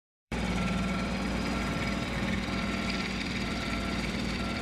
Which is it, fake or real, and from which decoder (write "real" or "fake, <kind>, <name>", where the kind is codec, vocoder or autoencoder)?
fake, vocoder, BigVGAN v2